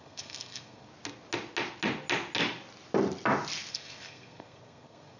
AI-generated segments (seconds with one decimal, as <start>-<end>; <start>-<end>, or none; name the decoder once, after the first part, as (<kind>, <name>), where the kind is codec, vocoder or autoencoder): 0.0-0.9 (codec, SNAC); 3.7-5.2